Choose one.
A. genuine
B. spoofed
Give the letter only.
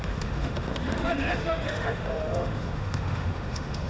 B